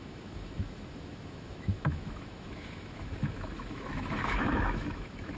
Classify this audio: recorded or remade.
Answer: remade